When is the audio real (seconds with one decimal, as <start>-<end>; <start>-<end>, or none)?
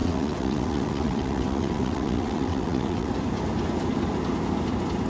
3.1-5.1